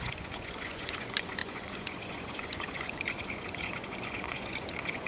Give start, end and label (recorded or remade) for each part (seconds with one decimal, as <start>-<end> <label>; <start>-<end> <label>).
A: 0.0-5.1 remade